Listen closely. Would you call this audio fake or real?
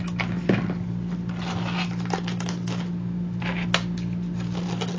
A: real